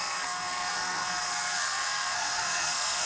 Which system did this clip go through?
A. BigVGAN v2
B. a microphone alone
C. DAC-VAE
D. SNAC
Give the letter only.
D